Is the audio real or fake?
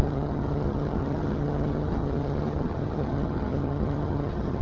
fake